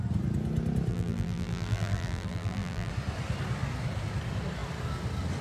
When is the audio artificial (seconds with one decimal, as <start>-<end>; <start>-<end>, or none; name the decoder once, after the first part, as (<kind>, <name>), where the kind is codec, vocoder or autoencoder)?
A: 0.9-2.9 (vocoder, BigVGAN v2)